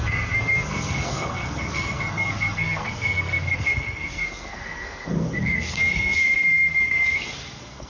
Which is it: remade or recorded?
remade